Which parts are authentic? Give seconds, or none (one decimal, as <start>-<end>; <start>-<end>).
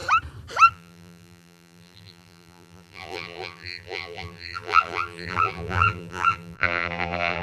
0.0-0.7